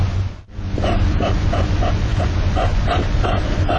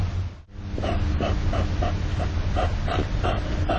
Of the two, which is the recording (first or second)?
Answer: second